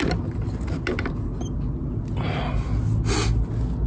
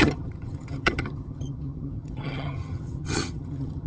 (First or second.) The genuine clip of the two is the first